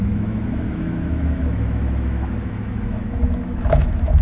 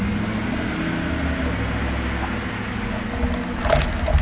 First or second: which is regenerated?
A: first